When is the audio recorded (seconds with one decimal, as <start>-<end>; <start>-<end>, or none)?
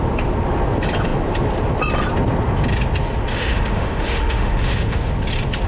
0.0-3.3; 5.1-5.7